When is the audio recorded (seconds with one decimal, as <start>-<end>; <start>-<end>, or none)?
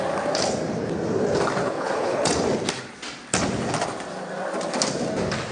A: 0.0-1.6; 2.3-5.5